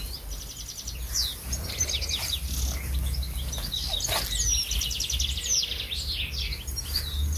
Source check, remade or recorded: recorded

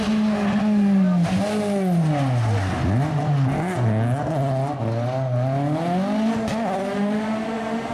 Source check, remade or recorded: recorded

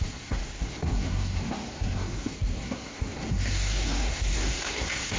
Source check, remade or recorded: remade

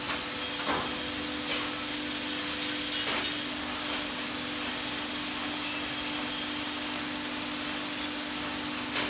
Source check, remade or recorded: recorded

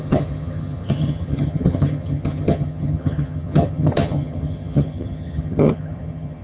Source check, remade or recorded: remade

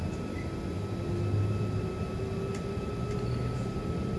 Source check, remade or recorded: recorded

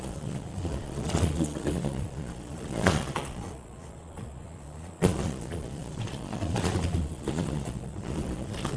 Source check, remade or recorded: remade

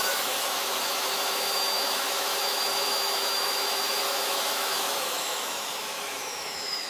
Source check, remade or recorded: remade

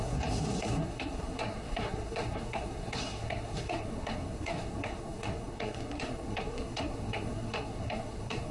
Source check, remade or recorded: remade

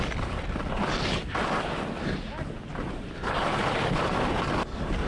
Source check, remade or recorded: recorded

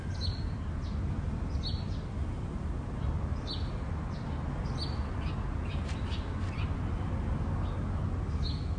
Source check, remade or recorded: recorded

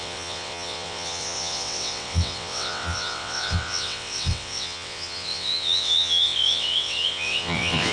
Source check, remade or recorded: remade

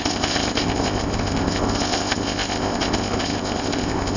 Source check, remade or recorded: remade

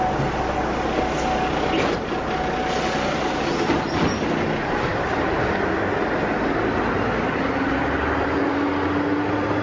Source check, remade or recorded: recorded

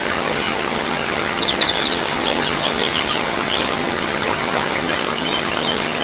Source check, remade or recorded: remade